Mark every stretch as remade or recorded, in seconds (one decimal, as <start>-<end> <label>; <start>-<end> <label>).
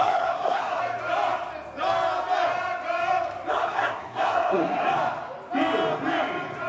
0.0-0.8 remade; 0.8-3.5 recorded; 3.5-4.8 remade; 4.8-6.7 recorded